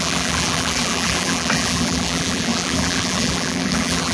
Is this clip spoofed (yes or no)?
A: yes